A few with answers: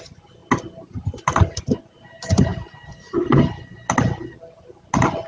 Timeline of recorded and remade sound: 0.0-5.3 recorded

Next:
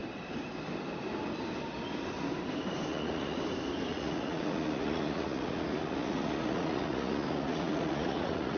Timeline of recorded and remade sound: 0.0-2.9 recorded; 2.9-3.4 remade; 3.4-3.9 recorded; 3.9-8.6 remade